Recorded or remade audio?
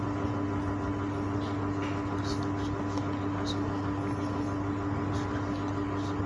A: recorded